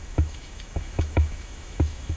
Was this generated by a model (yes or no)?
yes